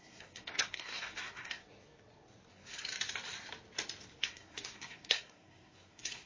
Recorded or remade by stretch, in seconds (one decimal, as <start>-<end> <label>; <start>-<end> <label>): 0.0-1.6 remade; 1.6-2.5 recorded; 2.5-2.9 remade; 2.9-4.2 recorded; 4.2-6.3 remade